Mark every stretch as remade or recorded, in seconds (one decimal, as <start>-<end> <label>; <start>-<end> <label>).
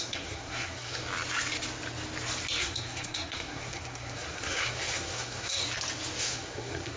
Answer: 0.0-1.0 remade; 1.0-2.6 recorded; 2.6-5.6 remade; 5.6-6.2 recorded; 6.2-7.0 remade